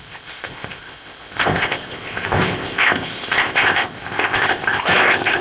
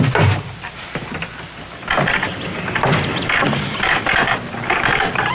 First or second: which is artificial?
first